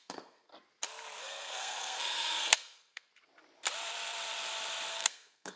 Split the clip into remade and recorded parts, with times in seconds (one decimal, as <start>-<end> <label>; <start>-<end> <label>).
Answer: 0.0-0.5 remade; 0.5-1.2 recorded; 1.2-3.1 remade; 3.1-4.9 recorded; 4.9-5.6 remade